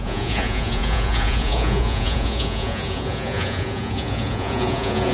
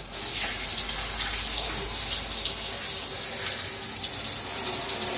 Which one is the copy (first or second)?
first